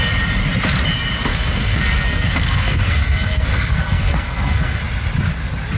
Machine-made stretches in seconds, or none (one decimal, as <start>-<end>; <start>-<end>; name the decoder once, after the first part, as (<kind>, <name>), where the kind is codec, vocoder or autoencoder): 1.3-4.8 (codec, SNAC)